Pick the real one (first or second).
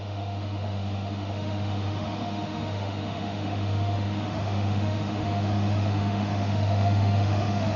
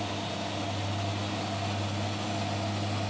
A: second